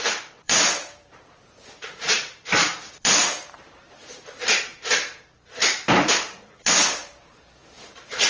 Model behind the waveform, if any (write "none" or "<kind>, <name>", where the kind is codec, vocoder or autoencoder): vocoder, BigVGAN v2